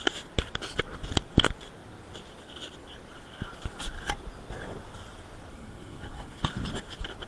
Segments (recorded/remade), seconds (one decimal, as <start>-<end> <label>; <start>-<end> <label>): 0.0-5.5 recorded; 5.5-6.4 remade; 6.4-7.3 recorded